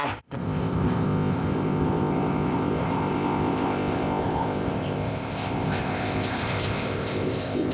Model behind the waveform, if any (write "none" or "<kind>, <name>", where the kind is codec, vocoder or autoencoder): codec, ZipCodec